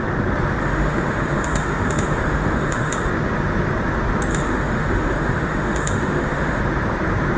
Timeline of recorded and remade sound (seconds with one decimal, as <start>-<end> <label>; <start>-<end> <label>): 0.0-0.6 recorded; 0.6-3.1 remade; 3.1-4.3 recorded; 4.3-6.6 remade; 6.6-7.4 recorded